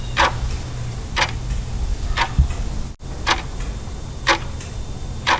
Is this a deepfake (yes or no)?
no